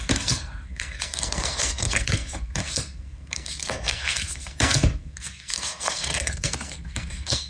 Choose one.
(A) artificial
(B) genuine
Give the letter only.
A